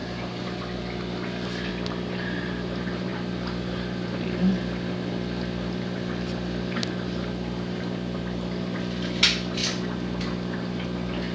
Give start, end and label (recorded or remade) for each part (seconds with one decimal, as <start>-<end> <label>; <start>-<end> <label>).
0.0-11.3 recorded